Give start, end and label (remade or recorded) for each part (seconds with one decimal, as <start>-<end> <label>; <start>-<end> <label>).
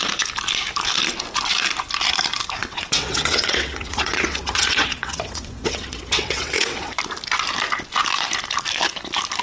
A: 0.0-2.6 recorded; 2.6-6.9 remade; 6.9-9.4 recorded